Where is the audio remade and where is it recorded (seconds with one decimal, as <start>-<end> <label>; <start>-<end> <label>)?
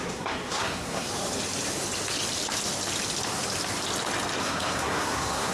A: 0.0-1.1 remade; 1.1-4.4 recorded; 4.4-5.5 remade